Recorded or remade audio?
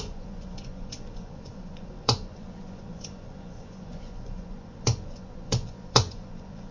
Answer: remade